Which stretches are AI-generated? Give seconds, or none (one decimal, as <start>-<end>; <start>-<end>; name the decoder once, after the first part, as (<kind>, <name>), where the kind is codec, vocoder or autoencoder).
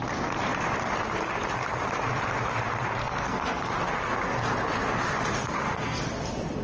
3.0-3.7 (codec, SNAC); 5.4-6.0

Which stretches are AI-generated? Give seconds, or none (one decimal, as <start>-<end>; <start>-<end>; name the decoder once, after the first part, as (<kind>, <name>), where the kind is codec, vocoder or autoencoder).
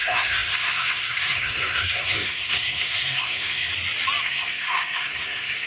0.0-3.7 (codec, SNAC); 4.2-5.7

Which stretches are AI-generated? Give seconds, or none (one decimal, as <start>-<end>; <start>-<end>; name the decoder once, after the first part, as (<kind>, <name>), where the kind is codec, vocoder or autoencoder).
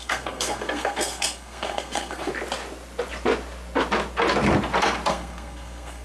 0.0-2.3 (codec, SNAC); 5.1-6.0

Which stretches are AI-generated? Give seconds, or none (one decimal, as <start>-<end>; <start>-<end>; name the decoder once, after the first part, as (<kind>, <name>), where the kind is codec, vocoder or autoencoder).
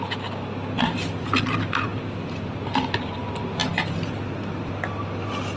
none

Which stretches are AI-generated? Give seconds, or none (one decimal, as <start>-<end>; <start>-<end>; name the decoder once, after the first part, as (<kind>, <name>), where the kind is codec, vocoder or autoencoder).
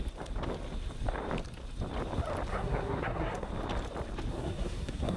2.5-3.5 (codec, SNAC); 4.3-5.2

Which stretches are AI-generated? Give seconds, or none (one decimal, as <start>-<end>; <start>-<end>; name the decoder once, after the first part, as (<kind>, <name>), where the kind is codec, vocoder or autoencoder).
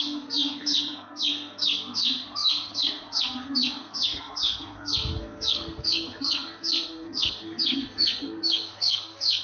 0.0-9.4 (codec, SNAC)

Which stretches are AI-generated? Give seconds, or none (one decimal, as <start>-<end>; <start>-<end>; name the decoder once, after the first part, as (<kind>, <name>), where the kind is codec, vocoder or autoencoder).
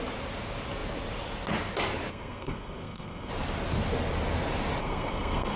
2.1-3.3 (codec, SNAC); 4.8-5.6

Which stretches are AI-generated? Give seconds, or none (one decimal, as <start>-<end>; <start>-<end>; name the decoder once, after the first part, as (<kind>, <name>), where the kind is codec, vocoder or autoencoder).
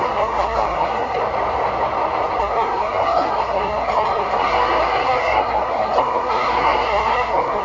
0.0-1.2 (codec, SNAC); 2.4-7.6